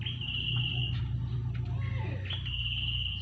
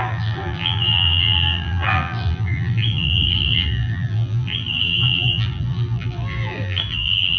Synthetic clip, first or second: second